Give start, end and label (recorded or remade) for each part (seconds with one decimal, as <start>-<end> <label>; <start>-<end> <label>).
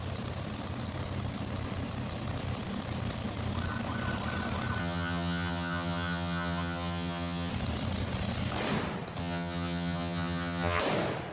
0.0-4.8 recorded; 4.8-7.5 remade; 7.5-9.2 recorded; 9.2-10.8 remade; 10.8-11.3 recorded